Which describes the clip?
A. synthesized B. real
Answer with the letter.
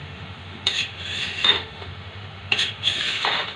A